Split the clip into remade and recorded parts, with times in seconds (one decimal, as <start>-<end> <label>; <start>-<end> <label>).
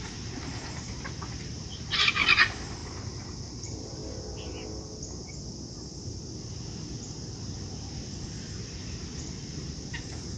0.0-4.0 remade; 4.0-8.7 recorded; 8.7-10.4 remade